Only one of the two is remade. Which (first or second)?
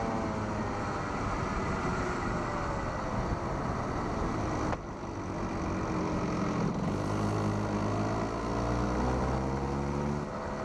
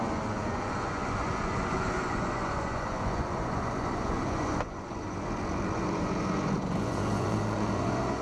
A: second